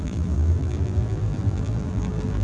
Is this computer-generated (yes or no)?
yes